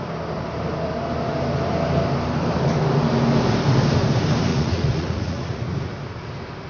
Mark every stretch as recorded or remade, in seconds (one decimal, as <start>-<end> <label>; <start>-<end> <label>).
0.0-4.5 recorded; 4.5-5.6 remade; 5.6-6.7 recorded